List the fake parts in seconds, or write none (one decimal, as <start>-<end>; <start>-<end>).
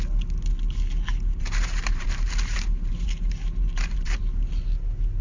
1.1-4.2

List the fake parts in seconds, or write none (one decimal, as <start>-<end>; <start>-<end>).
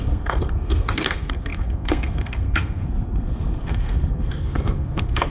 0.0-5.3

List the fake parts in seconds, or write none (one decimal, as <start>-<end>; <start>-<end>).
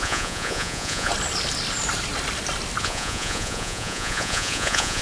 0.0-1.1; 2.8-5.0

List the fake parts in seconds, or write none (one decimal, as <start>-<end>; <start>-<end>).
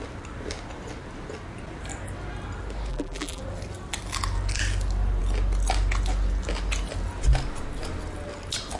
2.9-3.4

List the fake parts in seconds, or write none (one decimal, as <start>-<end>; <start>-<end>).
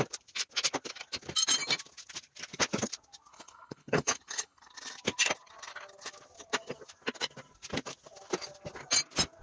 3.3-4.7